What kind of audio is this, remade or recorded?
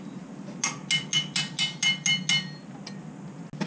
recorded